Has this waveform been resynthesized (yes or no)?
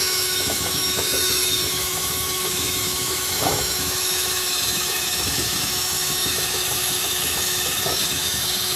yes